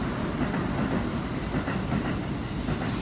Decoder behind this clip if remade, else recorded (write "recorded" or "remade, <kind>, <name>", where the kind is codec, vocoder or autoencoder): recorded